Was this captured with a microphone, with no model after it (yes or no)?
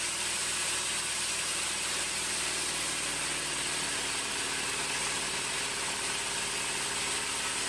yes